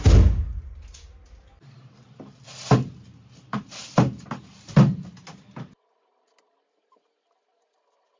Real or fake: real